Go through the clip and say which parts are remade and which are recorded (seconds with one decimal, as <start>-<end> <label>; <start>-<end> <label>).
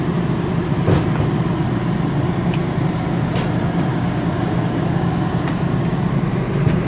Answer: 0.0-3.9 recorded; 3.9-5.2 remade; 5.2-6.9 recorded